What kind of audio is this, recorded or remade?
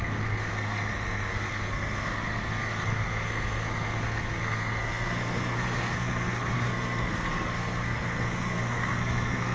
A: remade